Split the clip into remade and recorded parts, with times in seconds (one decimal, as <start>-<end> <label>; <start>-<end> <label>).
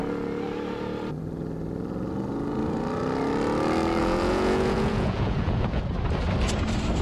0.0-4.0 recorded; 4.0-5.8 remade; 5.8-7.0 recorded